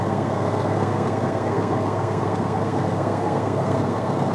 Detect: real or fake fake